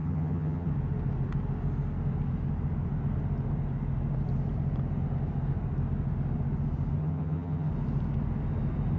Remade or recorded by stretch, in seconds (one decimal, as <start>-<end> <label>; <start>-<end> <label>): 0.0-0.7 remade; 0.7-7.0 recorded; 7.0-7.7 remade; 7.7-9.0 recorded

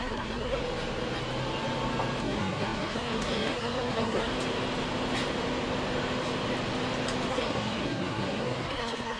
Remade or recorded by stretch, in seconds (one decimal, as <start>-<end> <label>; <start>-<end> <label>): 0.0-0.6 remade; 0.6-2.2 recorded; 2.2-4.3 remade; 4.3-7.3 recorded; 7.3-9.2 remade

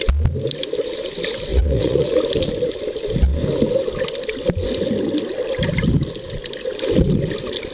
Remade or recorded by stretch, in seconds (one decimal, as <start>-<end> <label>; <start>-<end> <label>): 0.0-1.5 recorded; 1.5-2.2 remade; 2.2-7.7 recorded

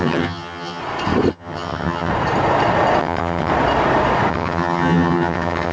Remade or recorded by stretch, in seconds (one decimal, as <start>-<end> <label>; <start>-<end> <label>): 0.0-0.8 remade; 0.8-1.3 recorded; 1.3-2.1 remade; 2.1-3.0 recorded; 3.0-3.5 remade; 3.5-4.3 recorded; 4.3-5.7 remade